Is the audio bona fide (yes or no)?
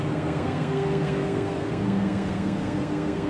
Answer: no